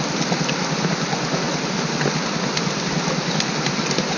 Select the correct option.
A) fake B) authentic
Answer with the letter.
B